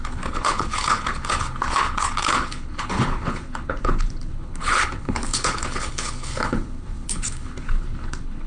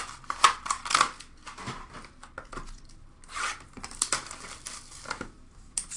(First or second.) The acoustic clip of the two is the second